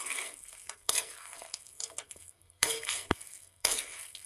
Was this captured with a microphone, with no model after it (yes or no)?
no